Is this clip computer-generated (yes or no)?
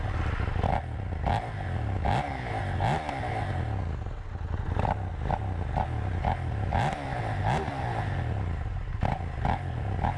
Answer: no